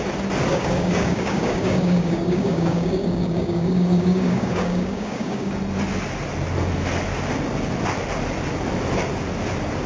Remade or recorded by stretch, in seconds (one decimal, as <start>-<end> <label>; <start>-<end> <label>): 0.0-0.5 recorded; 0.5-5.6 remade; 5.6-9.9 recorded